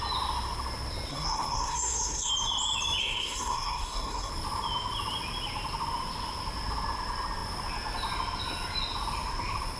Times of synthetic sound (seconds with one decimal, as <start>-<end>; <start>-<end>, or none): 1.1-2.3; 3.0-4.3